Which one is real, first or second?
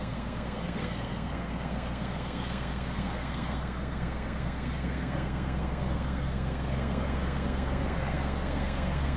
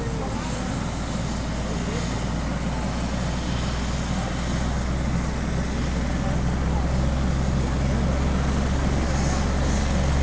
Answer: second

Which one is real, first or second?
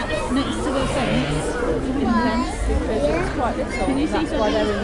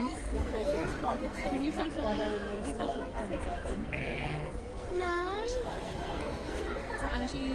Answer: first